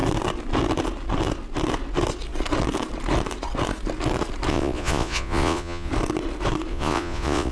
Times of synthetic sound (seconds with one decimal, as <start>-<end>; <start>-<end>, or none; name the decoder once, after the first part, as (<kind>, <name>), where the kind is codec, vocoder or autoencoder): 4.5-5.9 (vocoder, Vocos); 6.7-7.5